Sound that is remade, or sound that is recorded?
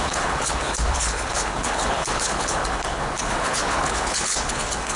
remade